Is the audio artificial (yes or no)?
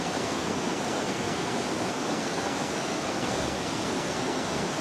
yes